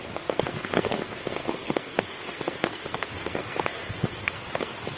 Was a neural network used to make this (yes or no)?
yes